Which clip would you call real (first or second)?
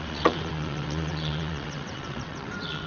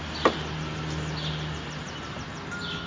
second